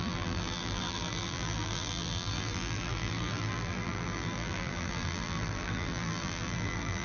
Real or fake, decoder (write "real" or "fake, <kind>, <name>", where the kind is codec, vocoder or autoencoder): fake, vocoder, BigVGAN v2